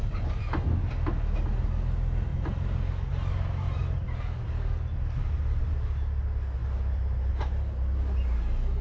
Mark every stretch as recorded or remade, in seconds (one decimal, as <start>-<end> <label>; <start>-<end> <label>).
0.0-4.9 recorded; 4.9-5.6 remade; 5.6-8.8 recorded